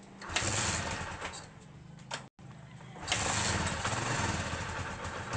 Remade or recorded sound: recorded